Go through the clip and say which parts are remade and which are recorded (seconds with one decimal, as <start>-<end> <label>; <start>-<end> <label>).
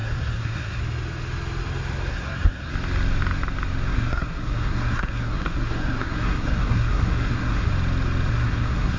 0.0-0.8 remade; 0.8-2.1 recorded; 2.1-2.7 remade; 2.7-3.9 recorded; 3.9-7.7 remade; 7.7-8.3 recorded; 8.3-9.0 remade